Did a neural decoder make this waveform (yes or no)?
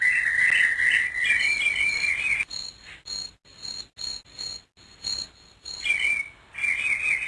no